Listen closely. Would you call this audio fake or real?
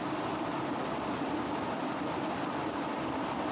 real